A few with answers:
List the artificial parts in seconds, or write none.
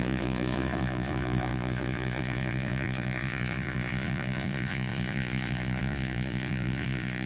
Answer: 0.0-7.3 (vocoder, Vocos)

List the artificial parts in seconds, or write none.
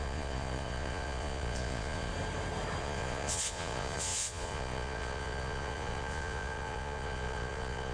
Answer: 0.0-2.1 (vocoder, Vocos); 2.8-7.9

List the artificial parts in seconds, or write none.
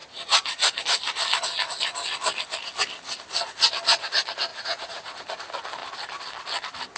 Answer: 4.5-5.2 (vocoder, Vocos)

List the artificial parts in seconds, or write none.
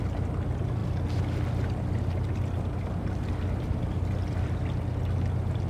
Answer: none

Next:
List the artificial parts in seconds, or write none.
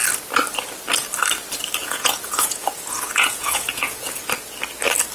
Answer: 1.8-4.2 (vocoder, Vocos)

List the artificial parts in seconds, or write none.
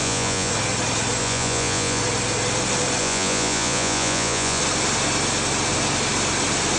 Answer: 0.0-0.5 (vocoder, Vocos); 1.2-2.0; 3.0-4.6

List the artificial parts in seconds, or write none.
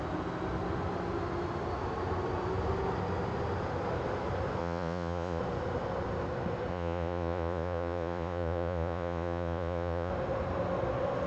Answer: 4.6-5.4 (vocoder, Vocos); 6.7-10.1